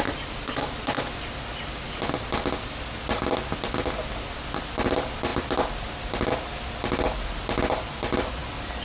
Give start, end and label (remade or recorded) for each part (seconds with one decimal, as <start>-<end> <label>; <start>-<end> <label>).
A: 0.0-5.3 recorded; 5.3-8.8 remade